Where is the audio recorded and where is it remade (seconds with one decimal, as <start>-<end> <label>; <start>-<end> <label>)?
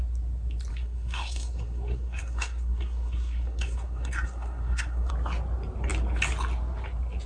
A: 0.0-0.7 recorded; 0.7-5.1 remade; 5.1-7.3 recorded